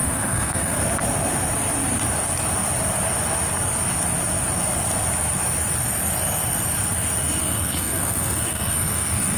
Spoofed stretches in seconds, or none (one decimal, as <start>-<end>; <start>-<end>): 0.0-0.8; 7.4-9.4